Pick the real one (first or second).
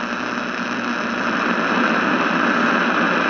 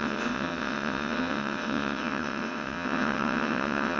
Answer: first